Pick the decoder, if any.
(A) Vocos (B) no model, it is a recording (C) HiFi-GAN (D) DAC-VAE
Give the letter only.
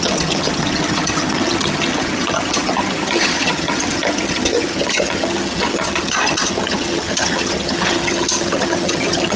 C